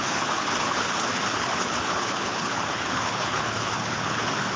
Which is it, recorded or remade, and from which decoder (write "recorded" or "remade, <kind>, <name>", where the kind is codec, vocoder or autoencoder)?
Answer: remade, codec, HILCodec